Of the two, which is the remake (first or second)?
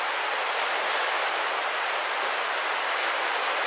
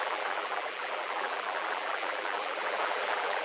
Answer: second